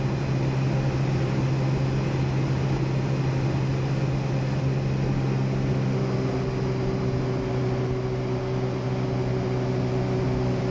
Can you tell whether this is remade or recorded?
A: recorded